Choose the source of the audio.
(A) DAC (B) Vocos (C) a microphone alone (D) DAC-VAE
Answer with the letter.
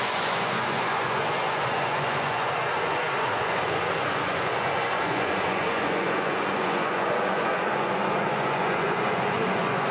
B